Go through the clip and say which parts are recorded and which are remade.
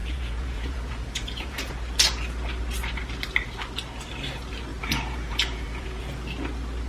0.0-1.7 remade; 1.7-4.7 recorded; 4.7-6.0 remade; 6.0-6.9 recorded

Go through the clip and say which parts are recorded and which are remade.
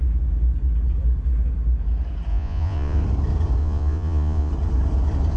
0.0-2.3 recorded; 2.3-3.0 remade; 3.0-3.6 recorded; 3.6-4.5 remade; 4.5-5.4 recorded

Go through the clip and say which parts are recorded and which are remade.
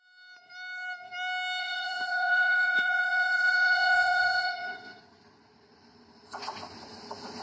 0.0-1.6 recorded; 1.6-5.0 remade; 5.0-7.4 recorded